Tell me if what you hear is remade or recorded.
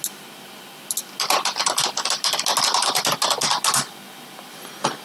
recorded